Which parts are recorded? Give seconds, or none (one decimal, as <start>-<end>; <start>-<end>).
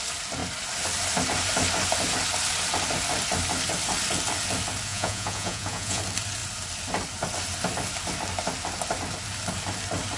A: 0.0-4.9; 6.0-10.2